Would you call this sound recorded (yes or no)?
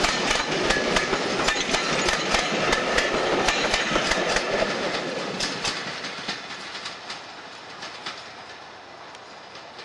yes